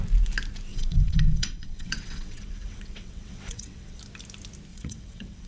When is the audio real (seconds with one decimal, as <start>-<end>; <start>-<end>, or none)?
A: 0.0-0.7; 4.0-4.7